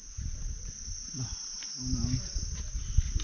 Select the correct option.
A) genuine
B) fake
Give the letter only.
A